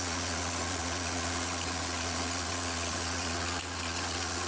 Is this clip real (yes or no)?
no